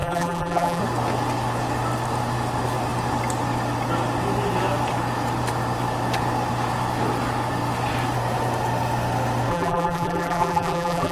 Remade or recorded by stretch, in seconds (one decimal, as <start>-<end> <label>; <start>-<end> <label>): 0.0-0.8 remade; 0.8-9.5 recorded; 9.5-11.1 remade